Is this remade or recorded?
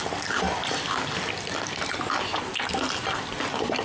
recorded